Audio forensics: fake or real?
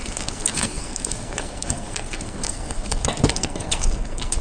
fake